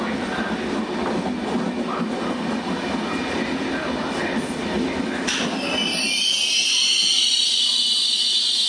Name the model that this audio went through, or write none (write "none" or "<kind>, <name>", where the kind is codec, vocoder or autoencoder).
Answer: none